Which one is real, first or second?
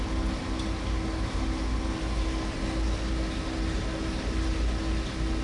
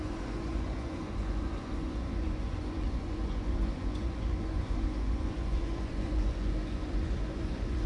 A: first